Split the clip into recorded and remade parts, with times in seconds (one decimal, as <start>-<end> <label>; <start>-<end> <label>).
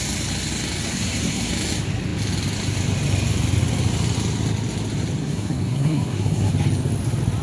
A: 0.0-0.9 recorded; 0.9-1.5 remade; 1.5-5.2 recorded; 5.2-6.5 remade; 6.5-7.4 recorded